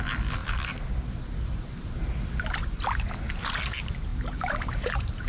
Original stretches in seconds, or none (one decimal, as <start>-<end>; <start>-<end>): 0.0-4.1